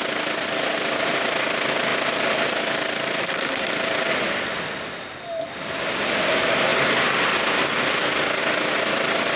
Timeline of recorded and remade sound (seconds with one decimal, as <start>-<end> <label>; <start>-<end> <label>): 0.0-3.2 recorded; 3.2-3.7 remade; 3.7-9.4 recorded